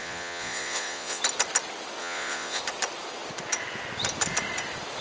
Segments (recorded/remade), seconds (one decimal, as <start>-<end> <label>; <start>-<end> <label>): 0.0-1.2 remade; 1.2-2.0 recorded; 2.0-2.6 remade; 2.6-5.0 recorded